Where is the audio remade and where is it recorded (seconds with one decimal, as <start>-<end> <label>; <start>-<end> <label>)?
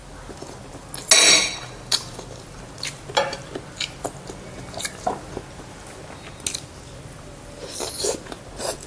0.0-8.9 recorded